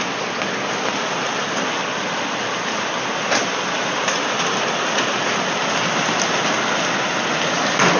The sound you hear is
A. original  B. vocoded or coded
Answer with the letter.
A